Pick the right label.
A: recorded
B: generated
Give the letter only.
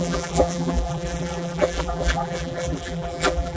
B